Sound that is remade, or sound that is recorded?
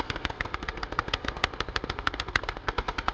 remade